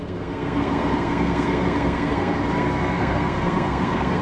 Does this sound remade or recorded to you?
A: remade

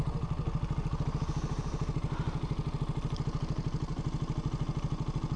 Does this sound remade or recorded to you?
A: recorded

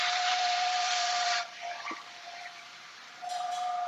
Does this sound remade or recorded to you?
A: remade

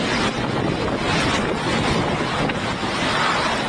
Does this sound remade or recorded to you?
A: recorded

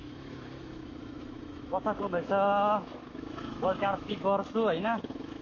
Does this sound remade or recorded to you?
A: remade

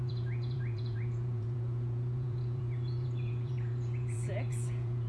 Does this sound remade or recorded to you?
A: remade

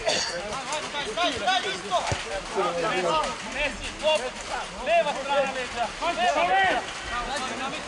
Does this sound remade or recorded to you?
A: recorded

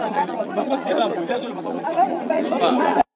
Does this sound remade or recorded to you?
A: remade